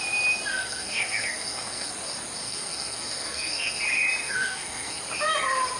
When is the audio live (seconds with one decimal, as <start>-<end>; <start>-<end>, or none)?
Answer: 0.0-0.5; 1.9-2.4; 3.8-4.2; 5.0-5.8